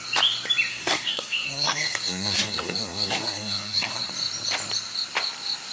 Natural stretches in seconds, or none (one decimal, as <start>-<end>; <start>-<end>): 0.0-0.7; 4.1-5.7